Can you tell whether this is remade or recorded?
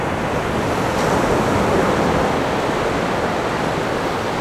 recorded